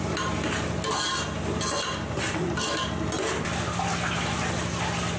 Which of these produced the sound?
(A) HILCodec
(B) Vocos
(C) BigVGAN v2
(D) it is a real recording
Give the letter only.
D